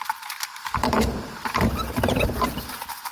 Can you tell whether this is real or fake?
fake